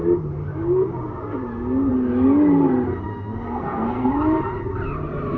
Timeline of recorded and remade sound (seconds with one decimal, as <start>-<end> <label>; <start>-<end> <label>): 0.0-3.1 recorded; 3.1-4.1 remade; 4.1-5.4 recorded